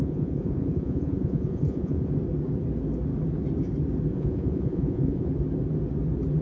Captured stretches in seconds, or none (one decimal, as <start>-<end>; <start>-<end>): 2.1-4.1; 5.3-6.4